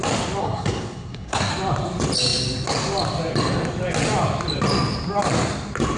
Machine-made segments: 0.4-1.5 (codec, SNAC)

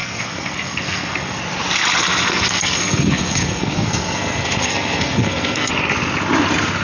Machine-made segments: 0.0-1.4 (codec, SNAC); 2.0-5.7

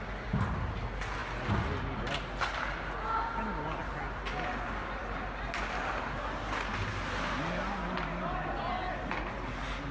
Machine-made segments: none